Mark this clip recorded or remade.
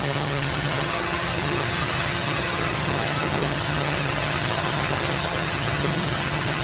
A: remade